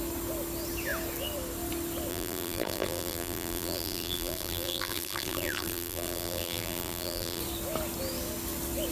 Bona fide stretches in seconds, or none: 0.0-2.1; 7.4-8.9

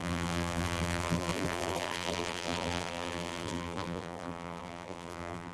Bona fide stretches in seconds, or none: none

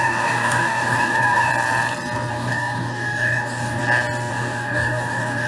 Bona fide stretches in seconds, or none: 1.5-2.3; 3.8-4.3

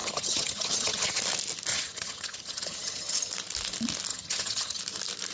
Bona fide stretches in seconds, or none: 1.2-1.7; 3.3-4.1; 4.8-5.3